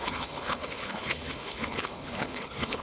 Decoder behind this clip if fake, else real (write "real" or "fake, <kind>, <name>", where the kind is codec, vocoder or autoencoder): fake, codec, HILCodec